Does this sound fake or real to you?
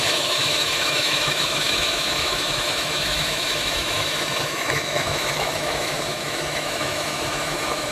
fake